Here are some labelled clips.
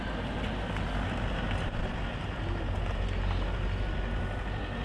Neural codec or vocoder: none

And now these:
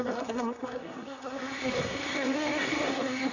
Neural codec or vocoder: codec, SNAC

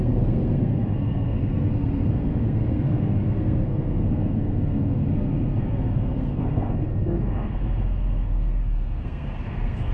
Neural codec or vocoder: codec, SNAC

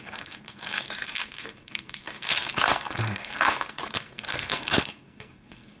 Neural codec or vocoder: codec, SNAC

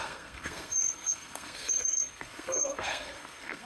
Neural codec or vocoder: codec, SNAC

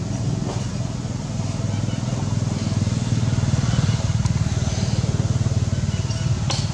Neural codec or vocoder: none